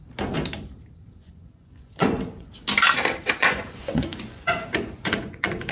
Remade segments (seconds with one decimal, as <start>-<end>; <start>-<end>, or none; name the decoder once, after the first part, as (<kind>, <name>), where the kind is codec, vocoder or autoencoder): 1.2-2.5 (vocoder, Vocos); 3.4-5.7